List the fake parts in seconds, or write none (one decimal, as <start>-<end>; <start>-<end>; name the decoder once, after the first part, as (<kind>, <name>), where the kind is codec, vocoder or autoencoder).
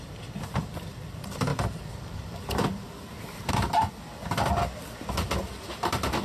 1.5-3.5 (vocoder, BigVGAN v2)